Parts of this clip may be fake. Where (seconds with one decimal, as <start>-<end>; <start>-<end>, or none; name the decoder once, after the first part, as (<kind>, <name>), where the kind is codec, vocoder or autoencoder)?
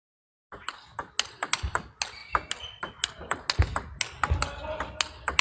none